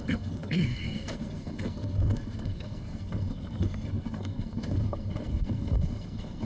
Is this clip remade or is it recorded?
remade